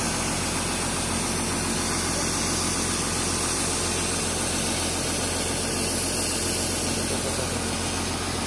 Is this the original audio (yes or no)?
yes